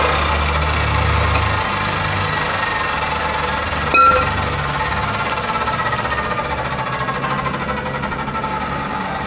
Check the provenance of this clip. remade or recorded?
recorded